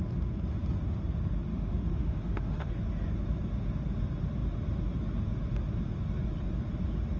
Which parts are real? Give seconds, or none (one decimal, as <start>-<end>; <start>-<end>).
0.0-1.5; 2.7-7.2